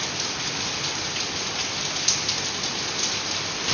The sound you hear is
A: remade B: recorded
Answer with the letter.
B